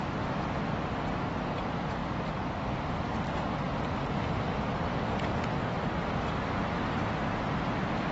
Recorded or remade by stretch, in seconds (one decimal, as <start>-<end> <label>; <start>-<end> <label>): 0.0-8.1 recorded